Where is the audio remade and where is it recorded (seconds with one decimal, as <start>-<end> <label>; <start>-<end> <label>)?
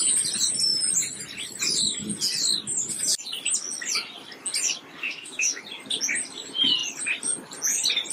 0.0-5.0 recorded; 5.0-5.6 remade; 5.6-8.1 recorded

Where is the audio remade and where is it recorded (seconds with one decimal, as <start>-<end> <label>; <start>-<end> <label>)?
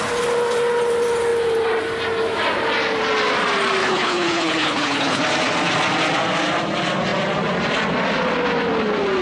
0.0-3.8 recorded; 3.8-5.2 remade; 5.2-9.2 recorded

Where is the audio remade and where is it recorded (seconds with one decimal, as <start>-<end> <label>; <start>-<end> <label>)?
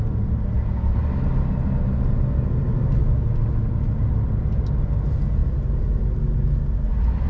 0.0-7.3 recorded